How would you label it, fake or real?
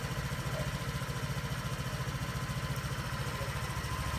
real